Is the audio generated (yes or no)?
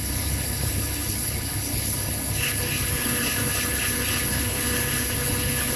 yes